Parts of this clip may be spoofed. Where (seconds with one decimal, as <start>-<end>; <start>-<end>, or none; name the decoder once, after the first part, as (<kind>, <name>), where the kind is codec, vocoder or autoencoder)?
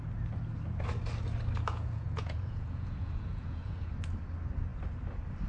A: 1.7-3.9 (vocoder, Vocos)